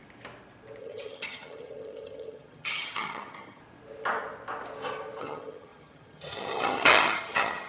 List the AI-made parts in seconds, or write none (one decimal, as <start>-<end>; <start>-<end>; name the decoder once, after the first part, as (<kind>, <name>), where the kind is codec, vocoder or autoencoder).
0.8-3.6 (vocoder, HiFi-GAN); 5.2-7.7